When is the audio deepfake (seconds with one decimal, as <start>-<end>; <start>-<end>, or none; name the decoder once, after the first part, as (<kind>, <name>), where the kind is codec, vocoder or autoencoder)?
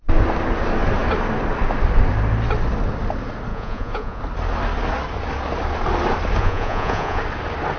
3.5-4.2 (vocoder, Vocos); 6.4-7.2